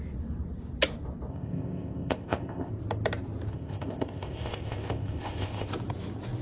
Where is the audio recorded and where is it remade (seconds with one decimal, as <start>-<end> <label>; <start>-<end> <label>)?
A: 0.0-1.3 recorded; 1.3-2.7 remade; 2.7-3.5 recorded; 3.5-5.7 remade; 5.7-6.4 recorded